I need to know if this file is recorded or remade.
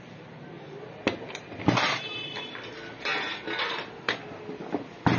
recorded